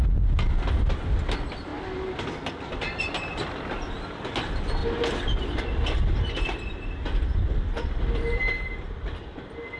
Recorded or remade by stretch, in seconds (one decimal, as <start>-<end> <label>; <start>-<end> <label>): 0.0-9.8 recorded